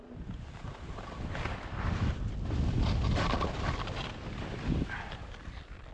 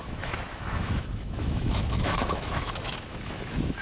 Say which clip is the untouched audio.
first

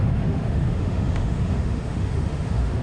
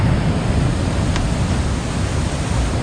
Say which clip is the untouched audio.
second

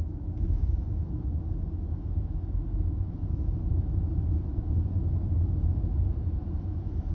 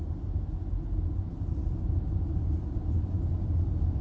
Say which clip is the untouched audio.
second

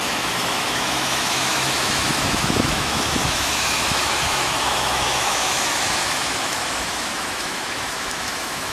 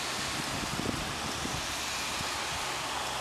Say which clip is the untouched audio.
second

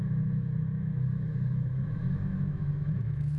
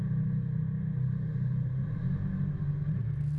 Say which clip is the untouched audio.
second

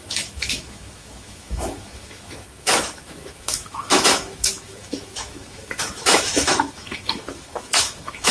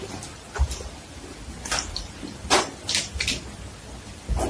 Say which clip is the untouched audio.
second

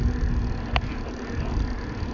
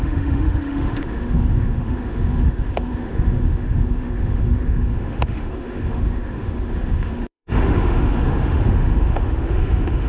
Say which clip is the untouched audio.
first